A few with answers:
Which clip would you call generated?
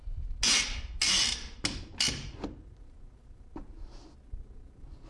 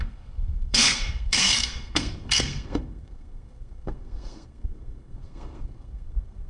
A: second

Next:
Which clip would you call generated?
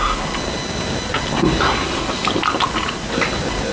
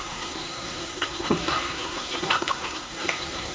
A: second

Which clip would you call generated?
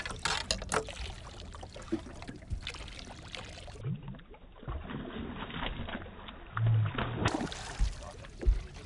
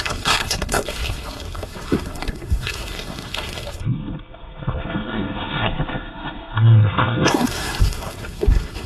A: second